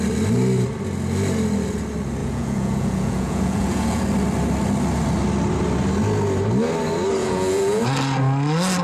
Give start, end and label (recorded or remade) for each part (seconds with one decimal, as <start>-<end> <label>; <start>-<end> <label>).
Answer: 0.0-2.2 recorded; 2.2-4.0 remade; 4.0-7.2 recorded; 7.2-7.8 remade; 7.8-8.8 recorded